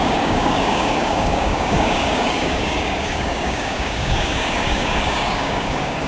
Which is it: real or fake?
fake